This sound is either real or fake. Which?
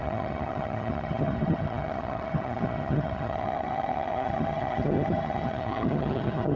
fake